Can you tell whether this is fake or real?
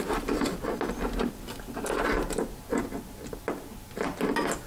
real